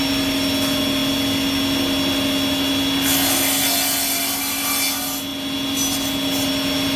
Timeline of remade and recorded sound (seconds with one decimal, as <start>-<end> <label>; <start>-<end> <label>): 0.0-7.0 recorded